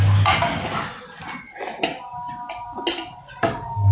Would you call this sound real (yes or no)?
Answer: yes